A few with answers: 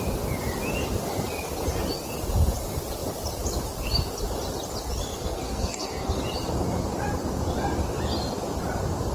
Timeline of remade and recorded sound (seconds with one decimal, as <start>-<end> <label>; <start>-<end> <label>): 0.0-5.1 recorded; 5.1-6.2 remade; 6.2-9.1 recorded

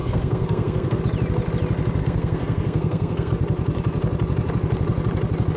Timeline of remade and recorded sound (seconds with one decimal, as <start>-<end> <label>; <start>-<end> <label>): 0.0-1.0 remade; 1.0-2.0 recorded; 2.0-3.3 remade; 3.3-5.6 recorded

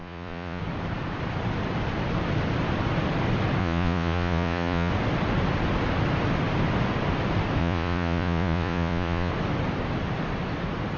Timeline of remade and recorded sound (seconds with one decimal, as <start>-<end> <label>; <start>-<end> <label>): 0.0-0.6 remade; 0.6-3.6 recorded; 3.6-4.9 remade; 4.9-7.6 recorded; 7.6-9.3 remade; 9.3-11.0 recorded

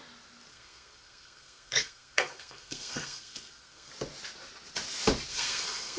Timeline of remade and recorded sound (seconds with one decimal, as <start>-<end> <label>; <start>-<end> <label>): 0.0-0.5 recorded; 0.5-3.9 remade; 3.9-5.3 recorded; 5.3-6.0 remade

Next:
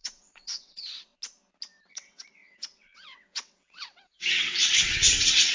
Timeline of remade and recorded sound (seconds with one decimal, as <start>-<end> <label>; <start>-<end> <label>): 0.0-1.1 remade; 1.1-1.9 recorded; 1.9-5.5 remade

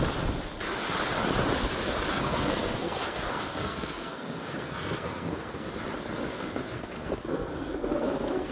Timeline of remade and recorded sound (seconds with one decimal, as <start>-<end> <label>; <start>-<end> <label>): 0.0-2.1 recorded; 2.1-5.7 remade; 5.7-6.3 recorded; 6.3-8.5 remade

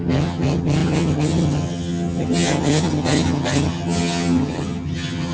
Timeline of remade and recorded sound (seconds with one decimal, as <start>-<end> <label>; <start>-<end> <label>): 0.0-5.3 remade